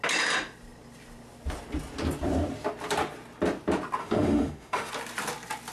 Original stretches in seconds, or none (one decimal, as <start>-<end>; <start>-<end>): 0.0-4.0; 4.9-5.7